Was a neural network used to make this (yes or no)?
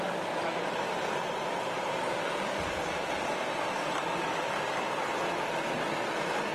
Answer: no